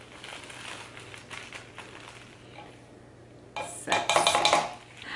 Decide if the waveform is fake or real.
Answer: real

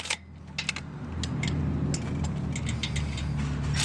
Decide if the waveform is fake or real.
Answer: real